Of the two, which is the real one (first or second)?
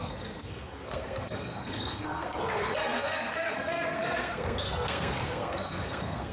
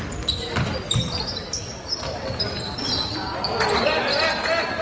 second